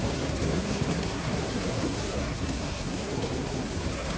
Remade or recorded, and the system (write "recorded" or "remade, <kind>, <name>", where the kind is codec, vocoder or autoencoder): remade, codec, SNAC